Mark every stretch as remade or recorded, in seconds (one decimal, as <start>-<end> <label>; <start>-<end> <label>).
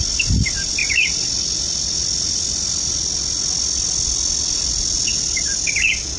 0.0-6.2 recorded